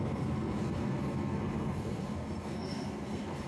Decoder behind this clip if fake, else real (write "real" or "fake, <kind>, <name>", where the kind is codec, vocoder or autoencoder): fake, codec, SNAC